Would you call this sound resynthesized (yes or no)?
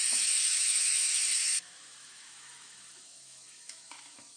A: yes